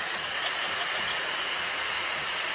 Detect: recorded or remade remade